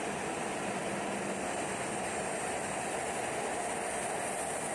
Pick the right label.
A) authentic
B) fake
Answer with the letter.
A